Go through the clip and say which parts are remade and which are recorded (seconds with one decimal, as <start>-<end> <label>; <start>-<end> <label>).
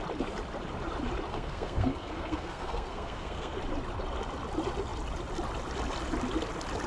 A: 0.0-1.3 recorded; 1.3-3.6 remade; 3.6-6.9 recorded